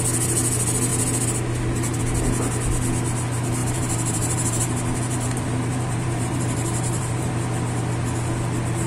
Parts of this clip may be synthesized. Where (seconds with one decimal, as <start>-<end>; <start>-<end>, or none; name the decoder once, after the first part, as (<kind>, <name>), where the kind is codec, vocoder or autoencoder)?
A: 3.6-7.3 (vocoder, BigVGAN v2)